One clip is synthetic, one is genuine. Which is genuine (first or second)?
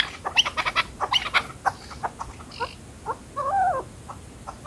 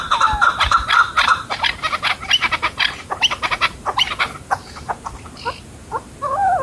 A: first